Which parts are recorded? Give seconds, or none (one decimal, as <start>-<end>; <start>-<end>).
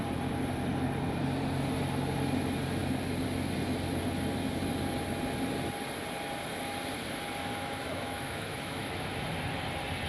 0.0-7.5; 9.2-10.1